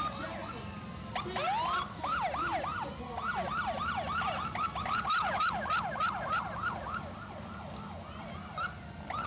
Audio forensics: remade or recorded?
recorded